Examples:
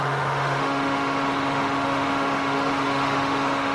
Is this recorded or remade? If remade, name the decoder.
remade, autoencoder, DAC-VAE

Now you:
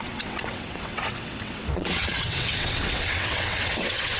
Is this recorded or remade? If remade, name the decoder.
remade, vocoder, WaveNeXt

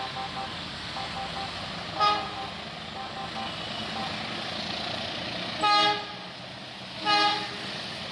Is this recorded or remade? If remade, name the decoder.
recorded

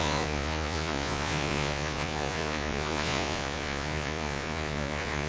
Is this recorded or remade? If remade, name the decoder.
remade, vocoder, Vocos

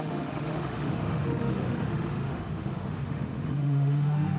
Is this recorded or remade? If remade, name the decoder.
remade, autoencoder, DAC-VAE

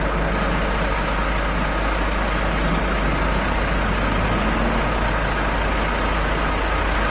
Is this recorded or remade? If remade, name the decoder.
recorded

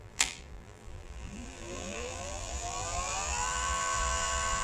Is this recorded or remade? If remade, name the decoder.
remade, vocoder, BigVGAN v2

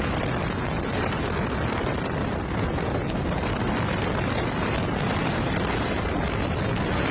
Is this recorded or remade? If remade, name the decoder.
recorded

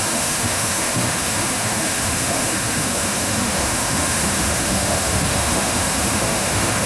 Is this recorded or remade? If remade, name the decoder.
remade, autoencoder, DAC-VAE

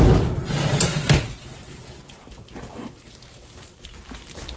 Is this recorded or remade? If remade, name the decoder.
recorded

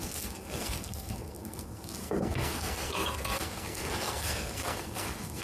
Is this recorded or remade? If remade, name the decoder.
remade, codec, SNAC